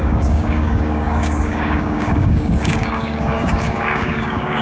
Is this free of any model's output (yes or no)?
no